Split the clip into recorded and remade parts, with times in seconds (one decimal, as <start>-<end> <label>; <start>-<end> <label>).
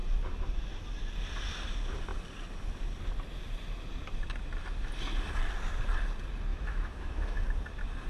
0.0-6.5 recorded; 6.5-7.4 remade; 7.4-8.1 recorded